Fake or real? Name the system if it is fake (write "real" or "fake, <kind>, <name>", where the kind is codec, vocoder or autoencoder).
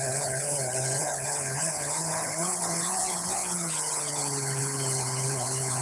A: fake, codec, HILCodec